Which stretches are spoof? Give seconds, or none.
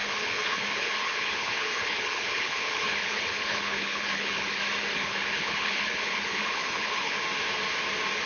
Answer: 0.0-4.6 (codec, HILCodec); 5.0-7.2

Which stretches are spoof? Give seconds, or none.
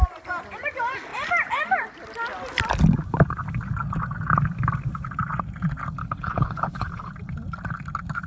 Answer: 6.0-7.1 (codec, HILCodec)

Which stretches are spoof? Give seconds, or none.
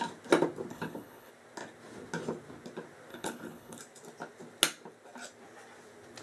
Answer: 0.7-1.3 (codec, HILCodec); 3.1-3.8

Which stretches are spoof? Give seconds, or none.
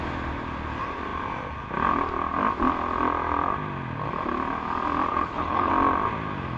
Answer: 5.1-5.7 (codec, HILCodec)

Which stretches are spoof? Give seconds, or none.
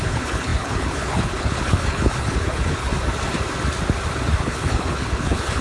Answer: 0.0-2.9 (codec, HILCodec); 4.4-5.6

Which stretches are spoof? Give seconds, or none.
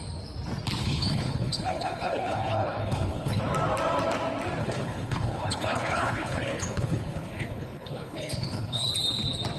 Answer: 0.8-3.4 (codec, HILCodec); 4.6-8.9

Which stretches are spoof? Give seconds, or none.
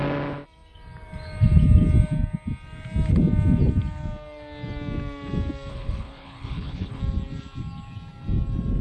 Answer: 5.7-7.0 (codec, HILCodec)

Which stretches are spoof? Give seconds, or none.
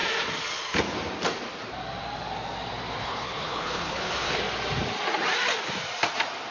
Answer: 3.0-4.4 (codec, HILCodec)